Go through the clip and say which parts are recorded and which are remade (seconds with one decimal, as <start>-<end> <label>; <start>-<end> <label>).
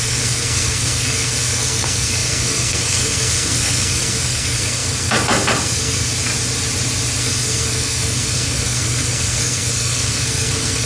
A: 0.0-6.3 remade; 6.3-7.2 recorded; 7.2-10.9 remade